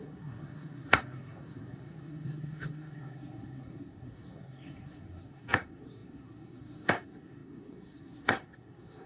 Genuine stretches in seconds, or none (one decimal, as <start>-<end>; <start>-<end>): none